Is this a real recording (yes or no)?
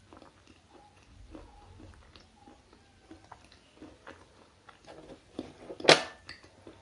yes